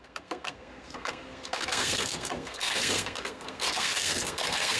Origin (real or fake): fake